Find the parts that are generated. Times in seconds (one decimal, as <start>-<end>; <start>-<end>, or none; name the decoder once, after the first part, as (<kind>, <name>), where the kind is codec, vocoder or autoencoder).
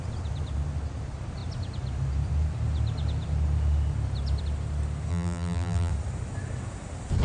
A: 5.1-5.9 (vocoder, BigVGAN v2)